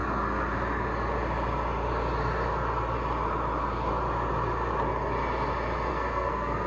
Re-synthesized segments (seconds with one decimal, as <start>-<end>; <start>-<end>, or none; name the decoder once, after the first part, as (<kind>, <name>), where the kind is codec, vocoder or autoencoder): 5.9-6.7 (codec, SNAC)